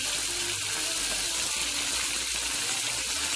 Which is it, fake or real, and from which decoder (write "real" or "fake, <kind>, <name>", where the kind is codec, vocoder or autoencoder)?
real